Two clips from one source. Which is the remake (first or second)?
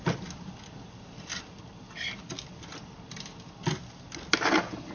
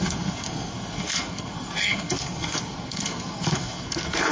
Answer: second